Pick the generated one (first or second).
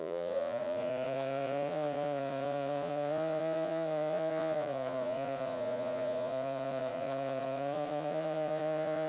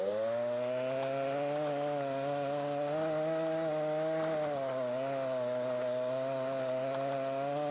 first